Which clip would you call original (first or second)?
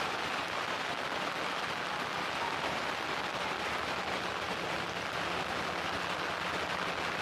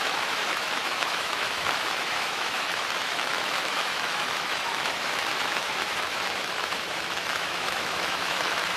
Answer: first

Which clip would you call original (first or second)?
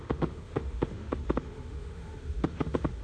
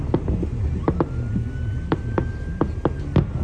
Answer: second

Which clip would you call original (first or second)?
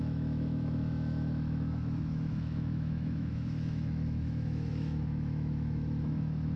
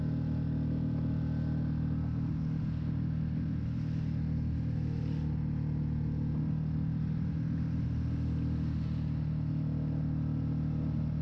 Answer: second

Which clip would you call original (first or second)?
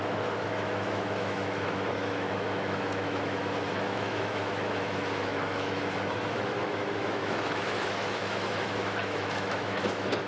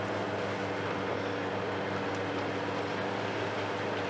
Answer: second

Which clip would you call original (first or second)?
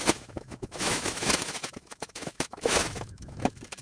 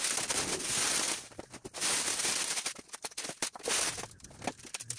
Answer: second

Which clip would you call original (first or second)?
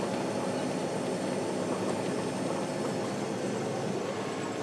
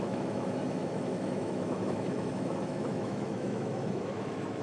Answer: first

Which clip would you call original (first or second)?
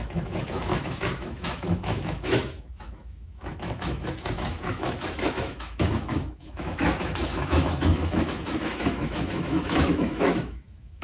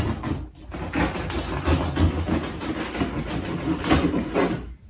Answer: second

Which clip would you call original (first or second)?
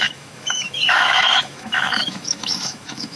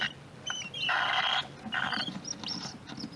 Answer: second